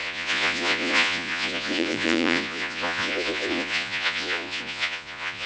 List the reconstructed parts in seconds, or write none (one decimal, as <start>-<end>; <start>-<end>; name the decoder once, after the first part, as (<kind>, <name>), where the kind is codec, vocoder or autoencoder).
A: 0.0-5.5 (vocoder, Vocos)

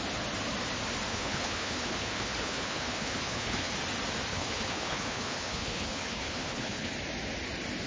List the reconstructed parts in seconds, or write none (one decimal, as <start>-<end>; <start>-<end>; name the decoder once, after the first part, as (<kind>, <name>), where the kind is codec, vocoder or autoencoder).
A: 1.1-3.7 (codec, HILCodec); 4.3-6.9

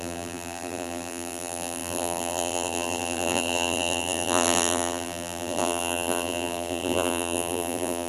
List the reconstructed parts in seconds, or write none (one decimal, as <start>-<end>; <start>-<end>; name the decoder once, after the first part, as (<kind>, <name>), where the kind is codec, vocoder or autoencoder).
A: 0.0-8.1 (vocoder, BigVGAN v2)

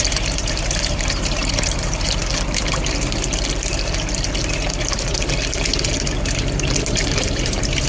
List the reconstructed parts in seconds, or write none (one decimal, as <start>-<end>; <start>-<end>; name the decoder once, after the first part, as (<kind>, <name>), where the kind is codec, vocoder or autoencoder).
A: 0.0-2.2 (vocoder, BigVGAN v2); 6.9-7.9

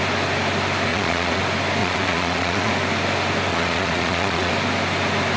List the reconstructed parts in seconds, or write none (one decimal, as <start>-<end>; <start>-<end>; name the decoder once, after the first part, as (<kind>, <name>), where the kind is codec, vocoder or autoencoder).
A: 0.9-1.4 (vocoder, Vocos); 1.8-2.7; 3.5-4.5